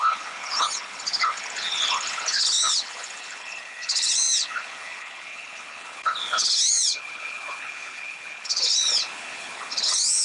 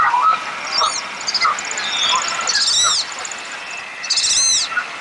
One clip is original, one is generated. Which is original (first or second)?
second